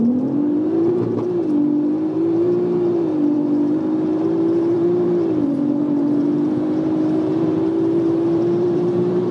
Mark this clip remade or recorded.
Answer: remade